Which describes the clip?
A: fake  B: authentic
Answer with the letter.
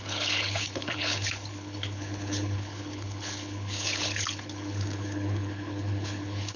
A